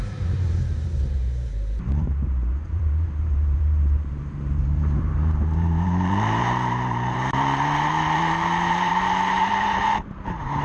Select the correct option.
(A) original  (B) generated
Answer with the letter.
B